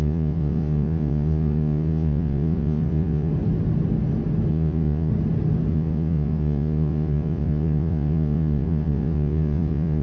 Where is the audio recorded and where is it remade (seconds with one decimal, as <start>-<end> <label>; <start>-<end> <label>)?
0.0-3.3 remade; 3.3-4.5 recorded; 4.5-5.1 remade; 5.1-5.7 recorded; 5.7-10.0 remade